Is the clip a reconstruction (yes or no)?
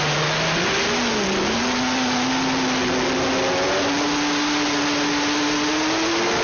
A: no